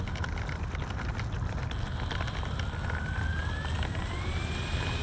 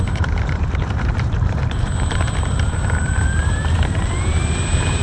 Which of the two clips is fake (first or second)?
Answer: second